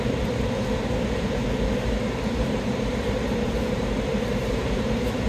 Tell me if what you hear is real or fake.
fake